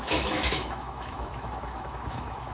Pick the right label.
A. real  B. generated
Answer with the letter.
B